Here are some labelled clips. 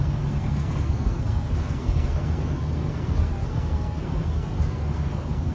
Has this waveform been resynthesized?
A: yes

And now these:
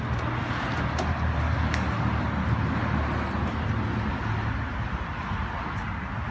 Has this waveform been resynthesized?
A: no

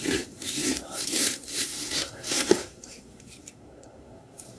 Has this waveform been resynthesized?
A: yes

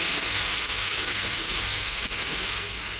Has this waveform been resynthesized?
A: yes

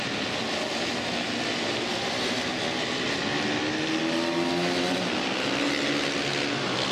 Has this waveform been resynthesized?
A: no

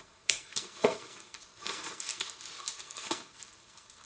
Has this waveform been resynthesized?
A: yes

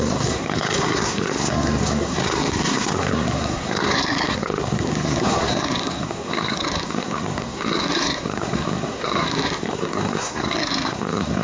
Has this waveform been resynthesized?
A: yes